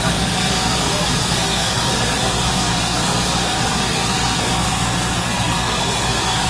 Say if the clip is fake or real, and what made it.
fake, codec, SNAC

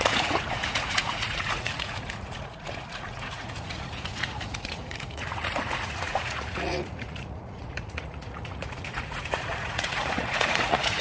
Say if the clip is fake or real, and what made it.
fake, vocoder, Vocos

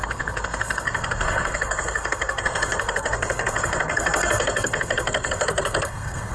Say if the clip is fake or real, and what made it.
fake, codec, SNAC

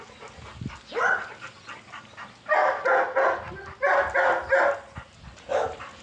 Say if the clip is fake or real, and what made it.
real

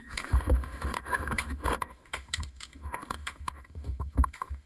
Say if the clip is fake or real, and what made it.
fake, autoencoder, DAC-VAE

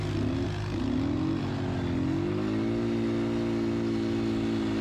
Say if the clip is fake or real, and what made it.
real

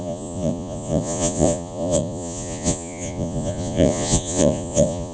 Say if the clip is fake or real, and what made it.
fake, vocoder, Vocos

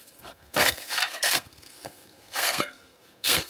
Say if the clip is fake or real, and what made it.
fake, codec, SNAC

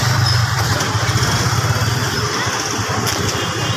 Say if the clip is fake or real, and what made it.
real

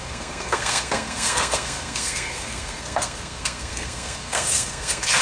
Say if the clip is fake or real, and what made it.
fake, codec, SNAC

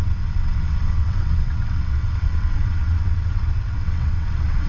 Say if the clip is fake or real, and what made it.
fake, vocoder, WaveNeXt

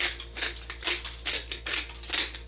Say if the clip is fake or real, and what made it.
real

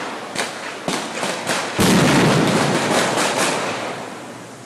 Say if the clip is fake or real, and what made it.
real